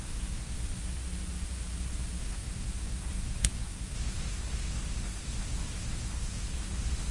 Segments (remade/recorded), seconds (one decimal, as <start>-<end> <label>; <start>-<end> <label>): 0.0-0.6 remade; 0.6-2.2 recorded; 2.2-7.1 remade